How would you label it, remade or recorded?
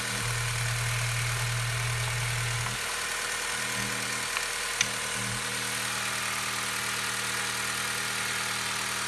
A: recorded